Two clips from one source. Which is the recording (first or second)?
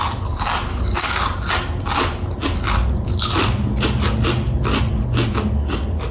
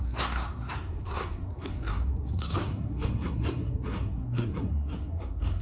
first